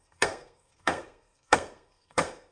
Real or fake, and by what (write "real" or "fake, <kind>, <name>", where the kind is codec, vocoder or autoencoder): fake, codec, SNAC